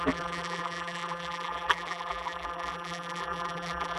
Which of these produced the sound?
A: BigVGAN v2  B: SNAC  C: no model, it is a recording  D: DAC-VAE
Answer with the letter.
A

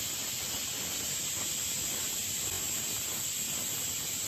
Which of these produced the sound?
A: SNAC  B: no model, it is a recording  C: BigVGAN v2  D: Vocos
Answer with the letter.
B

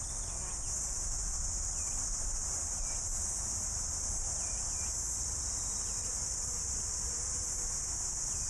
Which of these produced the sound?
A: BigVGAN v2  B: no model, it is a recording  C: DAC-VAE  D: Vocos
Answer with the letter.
A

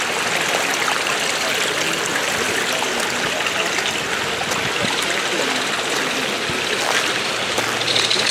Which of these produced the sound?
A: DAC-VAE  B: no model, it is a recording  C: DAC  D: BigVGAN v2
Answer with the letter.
B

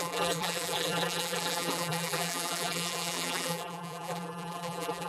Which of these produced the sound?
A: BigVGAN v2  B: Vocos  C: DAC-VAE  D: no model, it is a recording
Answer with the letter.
A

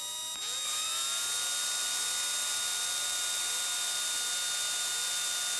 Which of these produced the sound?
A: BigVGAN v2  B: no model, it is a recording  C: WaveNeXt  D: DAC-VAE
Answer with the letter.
B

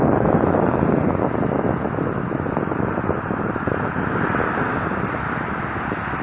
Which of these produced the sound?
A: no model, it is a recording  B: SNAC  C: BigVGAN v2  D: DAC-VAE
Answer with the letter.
A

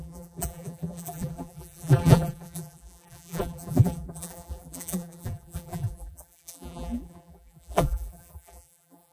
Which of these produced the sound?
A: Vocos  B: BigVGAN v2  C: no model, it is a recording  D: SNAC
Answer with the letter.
B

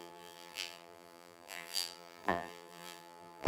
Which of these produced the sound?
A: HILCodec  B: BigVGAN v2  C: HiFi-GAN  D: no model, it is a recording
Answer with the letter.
B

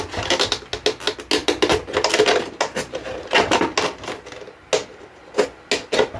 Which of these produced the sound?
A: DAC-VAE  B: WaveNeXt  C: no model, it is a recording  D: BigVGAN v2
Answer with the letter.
C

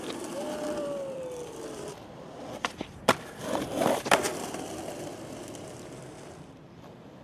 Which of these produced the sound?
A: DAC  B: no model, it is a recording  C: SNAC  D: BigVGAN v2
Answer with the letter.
D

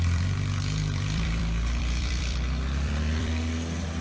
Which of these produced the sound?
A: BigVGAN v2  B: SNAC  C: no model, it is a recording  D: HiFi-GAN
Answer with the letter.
A